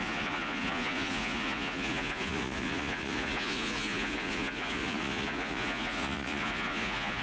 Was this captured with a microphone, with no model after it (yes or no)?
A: no